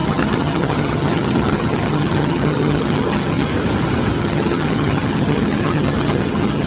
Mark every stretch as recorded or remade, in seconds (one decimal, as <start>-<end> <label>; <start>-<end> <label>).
0.0-3.5 remade; 3.5-4.2 recorded; 4.2-6.7 remade